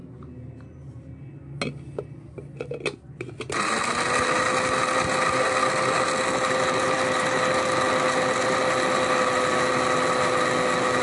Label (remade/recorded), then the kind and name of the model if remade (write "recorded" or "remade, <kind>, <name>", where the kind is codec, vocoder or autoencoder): recorded